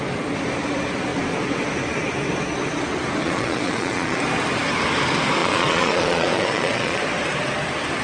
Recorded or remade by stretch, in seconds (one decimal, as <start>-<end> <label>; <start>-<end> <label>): 0.0-3.2 recorded; 3.2-4.2 remade; 4.2-5.4 recorded; 5.4-7.0 remade; 7.0-8.0 recorded